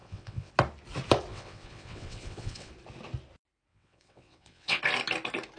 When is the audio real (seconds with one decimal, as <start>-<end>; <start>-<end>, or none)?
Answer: 0.5-1.3; 2.7-3.7; 4.8-5.6